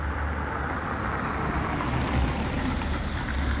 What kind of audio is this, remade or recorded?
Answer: recorded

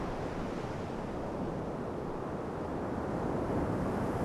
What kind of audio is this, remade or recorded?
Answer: recorded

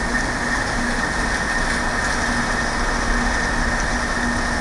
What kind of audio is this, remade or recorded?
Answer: recorded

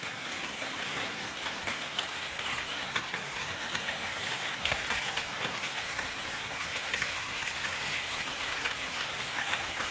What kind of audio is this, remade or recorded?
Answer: remade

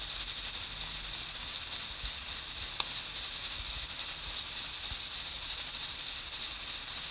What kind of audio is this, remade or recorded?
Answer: recorded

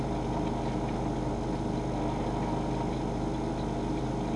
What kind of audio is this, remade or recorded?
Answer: recorded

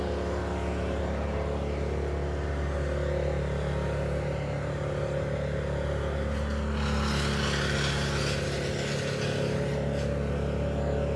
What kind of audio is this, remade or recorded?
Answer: recorded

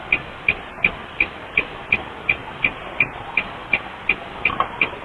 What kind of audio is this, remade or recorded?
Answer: recorded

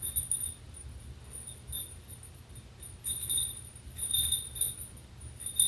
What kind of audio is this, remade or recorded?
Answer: recorded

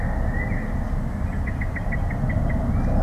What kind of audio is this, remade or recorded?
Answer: recorded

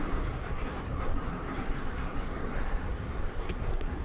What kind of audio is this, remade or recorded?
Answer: remade